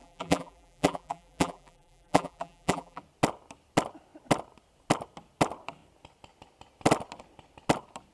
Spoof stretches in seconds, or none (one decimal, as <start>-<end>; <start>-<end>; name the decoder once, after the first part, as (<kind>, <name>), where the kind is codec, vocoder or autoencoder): 0.0-3.0 (vocoder, BigVGAN v2)